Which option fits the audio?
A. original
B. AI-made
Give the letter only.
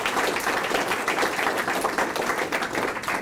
B